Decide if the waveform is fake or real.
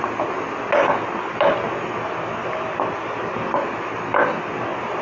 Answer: real